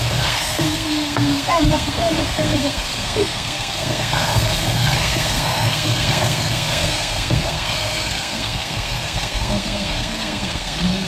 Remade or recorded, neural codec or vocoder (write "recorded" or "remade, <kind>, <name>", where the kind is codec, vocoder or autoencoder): remade, codec, SNAC